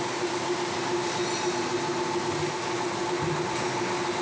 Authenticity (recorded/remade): recorded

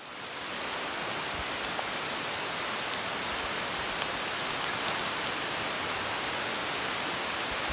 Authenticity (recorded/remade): recorded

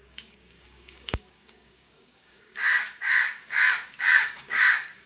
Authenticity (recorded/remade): remade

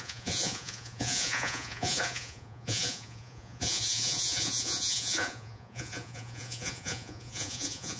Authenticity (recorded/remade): remade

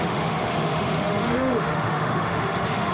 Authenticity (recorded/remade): remade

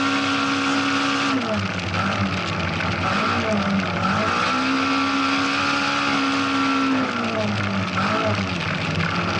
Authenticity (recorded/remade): recorded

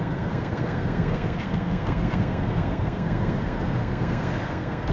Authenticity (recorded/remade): remade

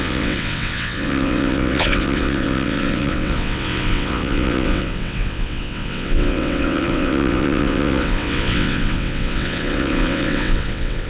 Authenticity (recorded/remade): remade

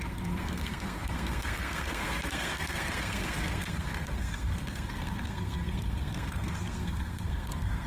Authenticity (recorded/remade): remade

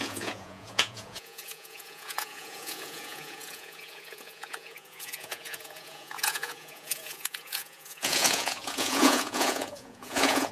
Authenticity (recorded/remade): remade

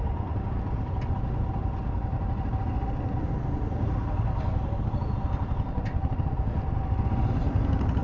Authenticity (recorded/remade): recorded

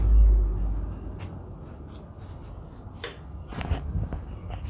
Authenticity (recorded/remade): recorded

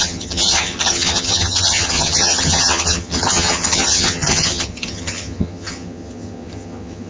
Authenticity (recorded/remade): remade